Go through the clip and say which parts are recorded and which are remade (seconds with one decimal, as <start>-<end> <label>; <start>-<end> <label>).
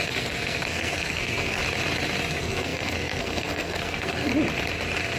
0.0-1.6 remade; 1.6-2.3 recorded; 2.3-4.3 remade; 4.3-5.2 recorded